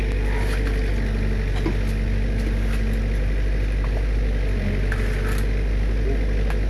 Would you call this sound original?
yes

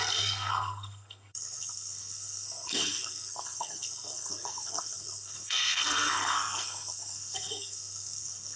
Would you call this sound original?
no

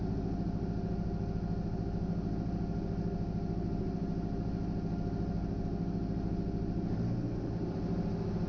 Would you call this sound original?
yes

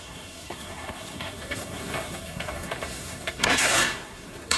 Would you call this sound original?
no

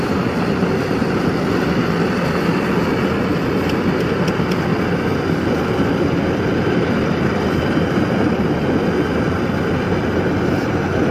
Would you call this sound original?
yes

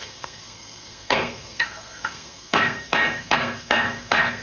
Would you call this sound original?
no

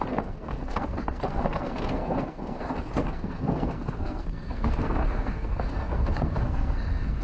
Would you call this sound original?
no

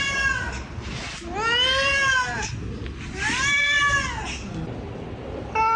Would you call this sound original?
yes